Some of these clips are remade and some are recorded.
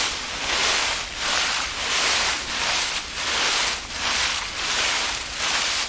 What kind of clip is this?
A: remade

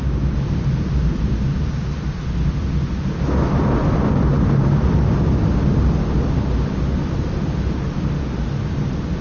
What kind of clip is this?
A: recorded